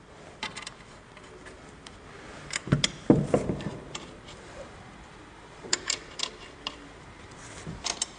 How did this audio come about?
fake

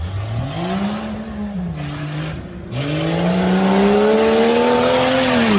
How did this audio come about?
real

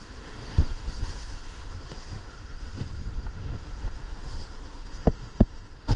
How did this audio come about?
fake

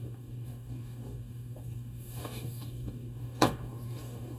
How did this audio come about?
fake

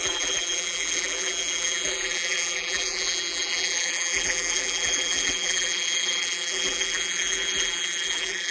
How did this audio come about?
fake